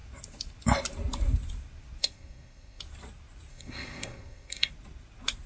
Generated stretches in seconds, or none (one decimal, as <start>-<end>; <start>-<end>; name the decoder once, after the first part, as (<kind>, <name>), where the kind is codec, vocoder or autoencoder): 2.0-2.8 (codec, SNAC); 3.5-4.7